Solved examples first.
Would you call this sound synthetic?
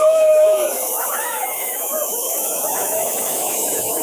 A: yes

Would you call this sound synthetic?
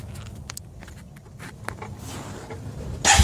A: no